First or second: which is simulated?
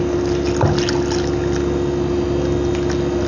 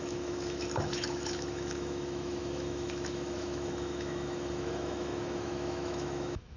second